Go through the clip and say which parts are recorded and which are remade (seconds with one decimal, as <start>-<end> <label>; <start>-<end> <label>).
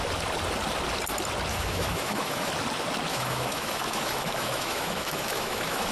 0.0-1.5 recorded; 1.5-2.5 remade; 2.5-3.1 recorded; 3.1-5.9 remade